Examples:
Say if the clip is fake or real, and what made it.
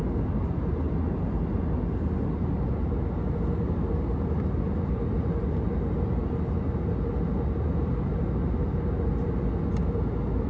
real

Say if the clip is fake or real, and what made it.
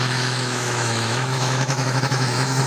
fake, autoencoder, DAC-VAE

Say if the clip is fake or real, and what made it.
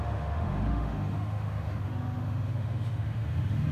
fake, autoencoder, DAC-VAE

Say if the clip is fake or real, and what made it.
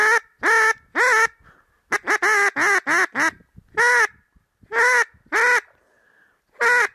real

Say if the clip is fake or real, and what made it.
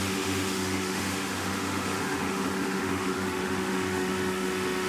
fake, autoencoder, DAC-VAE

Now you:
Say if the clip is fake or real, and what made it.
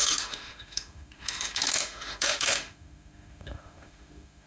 fake, autoencoder, DAC-VAE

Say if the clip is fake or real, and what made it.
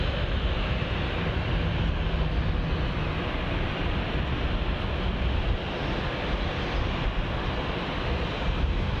real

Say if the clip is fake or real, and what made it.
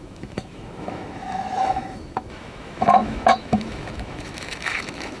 fake, autoencoder, DAC-VAE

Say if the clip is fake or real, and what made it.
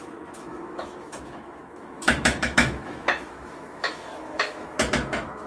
fake, autoencoder, DAC-VAE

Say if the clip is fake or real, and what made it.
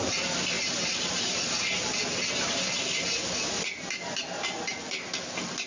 real